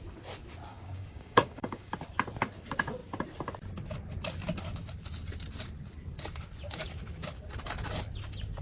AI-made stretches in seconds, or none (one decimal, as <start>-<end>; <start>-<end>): 0.7-1.9